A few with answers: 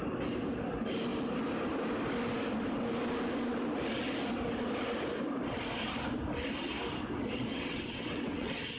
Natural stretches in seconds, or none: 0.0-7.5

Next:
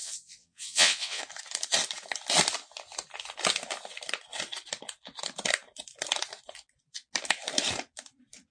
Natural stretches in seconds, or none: 1.2-8.5

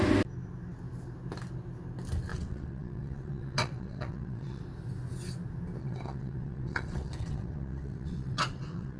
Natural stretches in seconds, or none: 0.0-2.3; 4.6-5.8

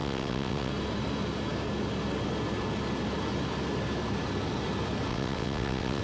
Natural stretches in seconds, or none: 0.7-5.1